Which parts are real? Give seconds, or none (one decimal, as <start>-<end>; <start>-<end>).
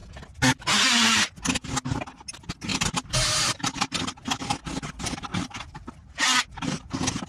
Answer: 0.0-2.7; 4.0-5.3; 5.9-7.3